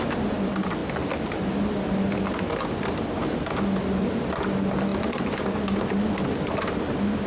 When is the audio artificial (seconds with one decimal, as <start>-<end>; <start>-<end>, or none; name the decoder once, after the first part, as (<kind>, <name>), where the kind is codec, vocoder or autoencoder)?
none